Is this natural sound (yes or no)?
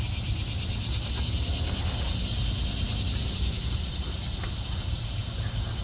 yes